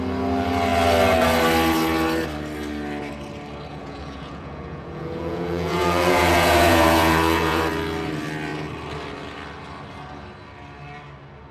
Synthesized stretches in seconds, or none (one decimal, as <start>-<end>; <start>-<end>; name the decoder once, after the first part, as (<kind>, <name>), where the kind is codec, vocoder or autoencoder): 3.7-7.6 (vocoder, Vocos)

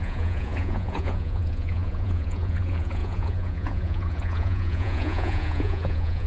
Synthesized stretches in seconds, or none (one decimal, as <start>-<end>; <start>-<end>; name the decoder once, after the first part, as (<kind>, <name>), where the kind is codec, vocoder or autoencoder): 0.0-6.3 (vocoder, Vocos)

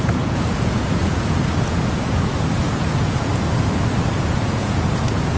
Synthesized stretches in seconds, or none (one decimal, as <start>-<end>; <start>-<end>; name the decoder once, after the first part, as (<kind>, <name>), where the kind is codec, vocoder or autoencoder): 0.0-3.3 (vocoder, Vocos); 4.1-5.4